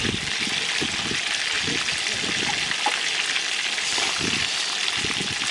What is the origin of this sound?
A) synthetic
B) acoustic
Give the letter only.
B